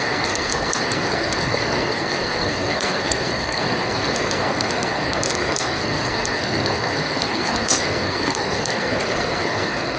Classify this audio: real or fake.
fake